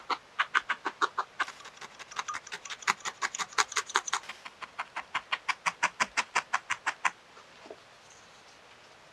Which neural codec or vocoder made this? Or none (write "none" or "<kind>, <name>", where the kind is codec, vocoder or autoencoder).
none